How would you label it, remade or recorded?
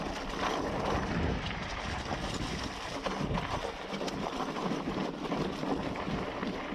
recorded